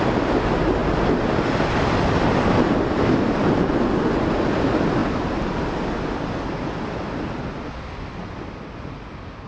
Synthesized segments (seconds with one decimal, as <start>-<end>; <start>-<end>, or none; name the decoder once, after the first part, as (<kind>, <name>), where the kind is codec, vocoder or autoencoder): none